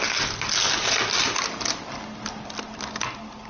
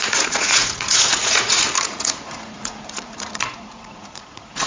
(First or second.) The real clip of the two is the first